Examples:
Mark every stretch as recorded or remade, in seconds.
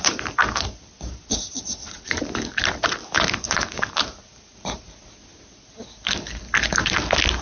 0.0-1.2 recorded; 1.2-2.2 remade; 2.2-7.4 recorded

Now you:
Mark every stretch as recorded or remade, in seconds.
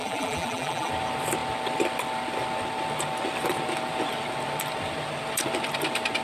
0.0-0.9 remade; 0.9-6.2 recorded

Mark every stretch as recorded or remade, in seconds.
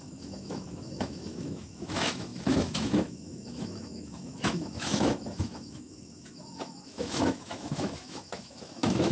0.0-9.1 remade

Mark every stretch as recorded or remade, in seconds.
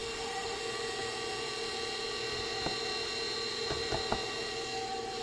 0.0-0.6 remade; 0.6-5.2 recorded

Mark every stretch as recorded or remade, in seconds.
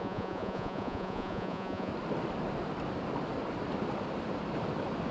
0.0-1.9 remade; 1.9-5.1 recorded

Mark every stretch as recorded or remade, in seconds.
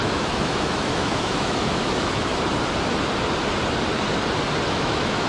0.0-2.3 remade; 2.3-4.7 recorded; 4.7-5.3 remade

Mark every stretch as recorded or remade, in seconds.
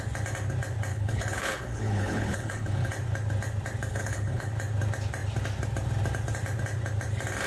0.0-0.9 recorded; 0.9-2.9 remade; 2.9-3.9 recorded; 3.9-4.5 remade; 4.5-7.5 recorded